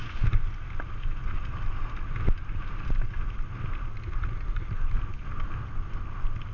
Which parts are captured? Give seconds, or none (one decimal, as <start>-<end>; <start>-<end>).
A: 0.0-6.5